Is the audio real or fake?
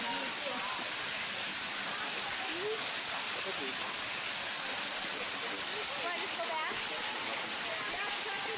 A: real